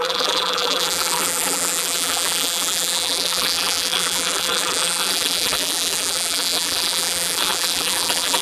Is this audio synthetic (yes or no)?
yes